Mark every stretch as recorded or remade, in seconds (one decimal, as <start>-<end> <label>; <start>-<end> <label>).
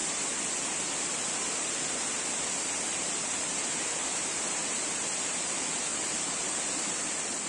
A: 0.0-7.5 recorded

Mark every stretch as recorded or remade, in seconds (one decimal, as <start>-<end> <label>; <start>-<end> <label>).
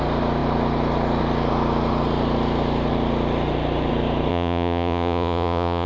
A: 0.0-4.3 recorded; 4.3-5.9 remade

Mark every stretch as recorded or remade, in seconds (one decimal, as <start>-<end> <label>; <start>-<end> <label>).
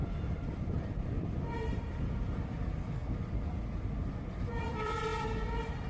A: 0.0-3.0 remade; 3.0-4.6 recorded; 4.6-5.1 remade; 5.1-5.9 recorded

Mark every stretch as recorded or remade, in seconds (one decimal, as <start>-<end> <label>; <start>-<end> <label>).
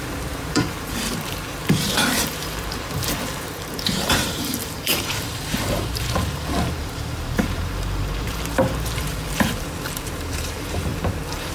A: 0.0-11.5 remade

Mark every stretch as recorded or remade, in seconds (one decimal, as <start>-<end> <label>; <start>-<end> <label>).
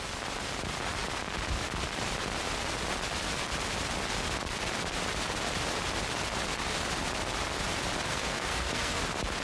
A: 0.0-8.1 recorded; 8.1-9.0 remade; 9.0-9.4 recorded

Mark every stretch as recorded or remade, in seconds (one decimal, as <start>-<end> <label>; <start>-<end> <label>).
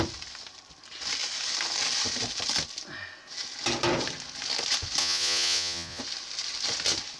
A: 0.0-5.0 recorded; 5.0-6.0 remade; 6.0-7.2 recorded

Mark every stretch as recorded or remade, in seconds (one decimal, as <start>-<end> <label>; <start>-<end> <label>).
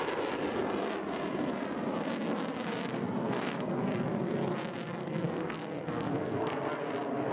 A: 0.0-2.9 recorded; 2.9-3.7 remade; 3.7-5.0 recorded; 5.0-6.8 remade; 6.8-7.3 recorded